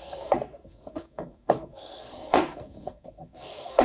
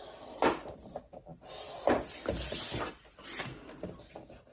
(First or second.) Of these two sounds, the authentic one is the second